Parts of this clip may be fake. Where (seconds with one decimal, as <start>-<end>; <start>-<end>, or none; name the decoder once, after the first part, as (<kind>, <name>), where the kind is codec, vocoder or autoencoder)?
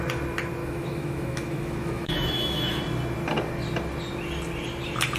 0.6-2.8 (autoencoder, DAC-VAE)